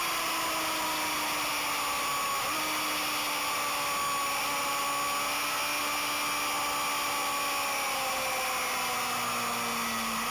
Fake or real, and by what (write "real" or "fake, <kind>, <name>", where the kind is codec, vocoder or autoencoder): real